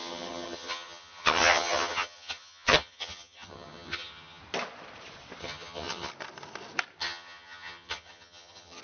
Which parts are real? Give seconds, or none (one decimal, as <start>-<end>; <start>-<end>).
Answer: 4.4-5.4; 6.1-7.0